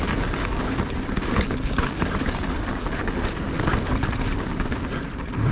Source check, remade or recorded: recorded